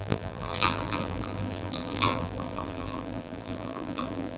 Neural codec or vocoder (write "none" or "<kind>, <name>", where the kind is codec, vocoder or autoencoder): vocoder, BigVGAN v2